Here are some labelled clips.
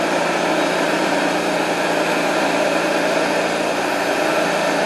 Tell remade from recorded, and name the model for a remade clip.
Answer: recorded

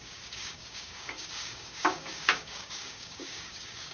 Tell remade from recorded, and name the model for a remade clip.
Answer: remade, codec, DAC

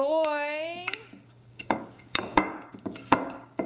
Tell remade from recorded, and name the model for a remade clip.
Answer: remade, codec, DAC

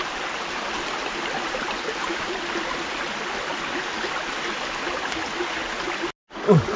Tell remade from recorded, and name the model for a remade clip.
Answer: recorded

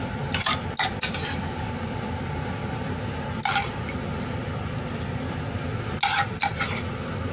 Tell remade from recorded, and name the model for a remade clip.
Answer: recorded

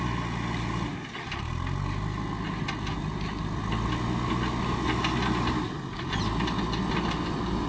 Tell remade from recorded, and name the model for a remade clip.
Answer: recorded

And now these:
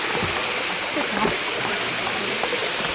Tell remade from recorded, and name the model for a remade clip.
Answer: recorded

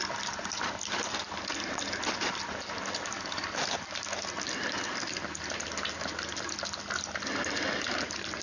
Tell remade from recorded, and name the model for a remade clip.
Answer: recorded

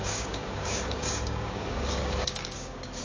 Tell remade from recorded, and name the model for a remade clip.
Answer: remade, codec, DAC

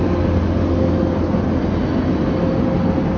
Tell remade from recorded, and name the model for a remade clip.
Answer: recorded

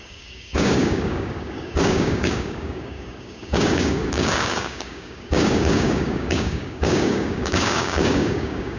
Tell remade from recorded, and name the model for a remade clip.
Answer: remade, codec, DAC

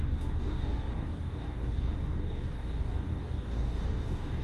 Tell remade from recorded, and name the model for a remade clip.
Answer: remade, codec, DAC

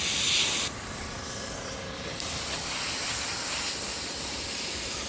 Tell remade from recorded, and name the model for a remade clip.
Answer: recorded